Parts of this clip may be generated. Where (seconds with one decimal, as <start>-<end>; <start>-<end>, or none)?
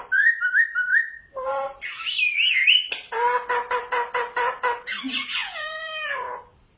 5.4-5.9